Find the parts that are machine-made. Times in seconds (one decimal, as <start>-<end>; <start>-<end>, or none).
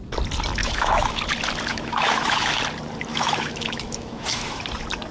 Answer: 0.6-1.2; 1.7-2.6; 3.1-4.6